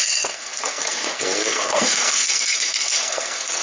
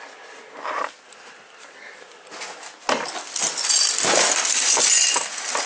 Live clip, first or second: second